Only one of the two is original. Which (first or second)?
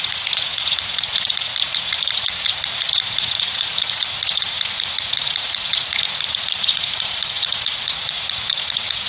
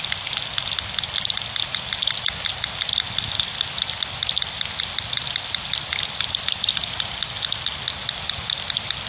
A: second